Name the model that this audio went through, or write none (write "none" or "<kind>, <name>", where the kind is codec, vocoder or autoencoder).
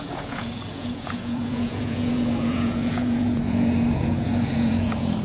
vocoder, Vocos